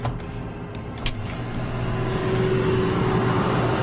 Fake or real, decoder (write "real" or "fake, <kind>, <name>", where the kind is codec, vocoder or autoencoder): real